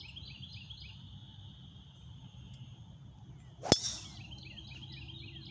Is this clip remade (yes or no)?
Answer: no